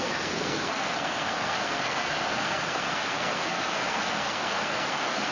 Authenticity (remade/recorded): remade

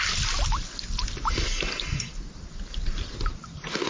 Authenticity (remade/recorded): recorded